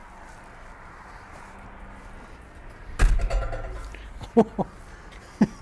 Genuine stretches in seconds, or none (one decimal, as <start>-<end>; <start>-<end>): 0.0-5.6